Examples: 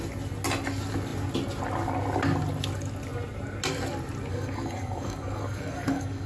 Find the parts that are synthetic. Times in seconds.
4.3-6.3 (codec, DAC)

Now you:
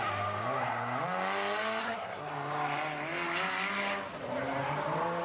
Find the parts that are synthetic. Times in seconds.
1.8-2.3 (codec, SNAC)

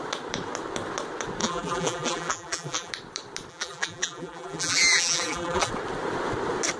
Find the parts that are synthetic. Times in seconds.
1.4-2.9 (vocoder, BigVGAN v2); 3.5-5.7

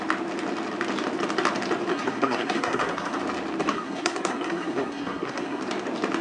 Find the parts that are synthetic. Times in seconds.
1.9-3.2 (codec, SNAC); 3.6-5.6

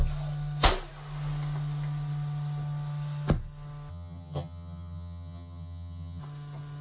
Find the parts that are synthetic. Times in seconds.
3.9-6.2 (vocoder, HiFi-GAN)

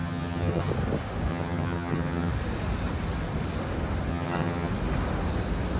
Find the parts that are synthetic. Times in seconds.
0.0-0.7 (vocoder, HiFi-GAN); 1.3-2.3; 4.1-4.7